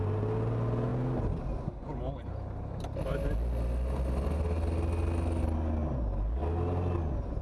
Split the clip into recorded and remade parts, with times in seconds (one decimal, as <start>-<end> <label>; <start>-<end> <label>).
0.0-7.4 recorded